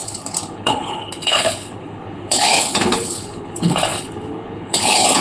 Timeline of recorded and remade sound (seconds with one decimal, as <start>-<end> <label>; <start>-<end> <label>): 0.0-5.2 remade